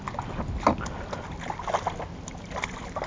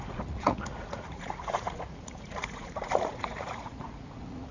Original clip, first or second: first